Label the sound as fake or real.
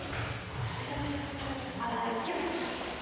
real